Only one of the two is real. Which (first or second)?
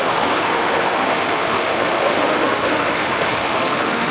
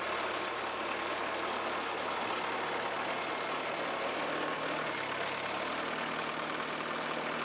second